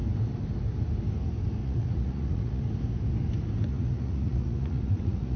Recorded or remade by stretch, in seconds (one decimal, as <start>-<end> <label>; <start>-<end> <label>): 0.0-1.6 recorded; 1.6-2.6 remade; 2.6-3.7 recorded; 3.7-5.4 remade